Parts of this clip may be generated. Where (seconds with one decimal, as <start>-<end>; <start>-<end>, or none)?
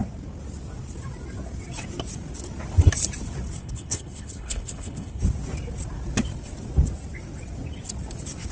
3.6-5.2